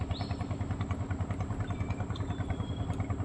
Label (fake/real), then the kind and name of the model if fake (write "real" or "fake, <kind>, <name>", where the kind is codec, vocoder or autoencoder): real